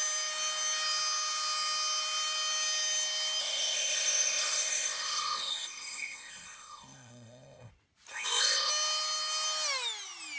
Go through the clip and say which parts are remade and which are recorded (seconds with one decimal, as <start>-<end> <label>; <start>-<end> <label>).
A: 0.0-3.4 recorded; 3.4-7.7 remade; 7.7-8.1 recorded; 8.1-8.7 remade; 8.7-10.4 recorded